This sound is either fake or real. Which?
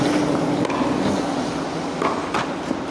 real